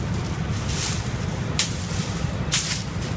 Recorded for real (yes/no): yes